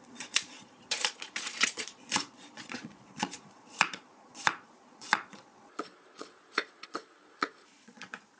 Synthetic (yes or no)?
yes